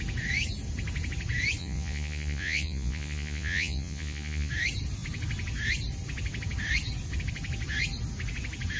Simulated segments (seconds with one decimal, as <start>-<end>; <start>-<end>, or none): 1.6-4.5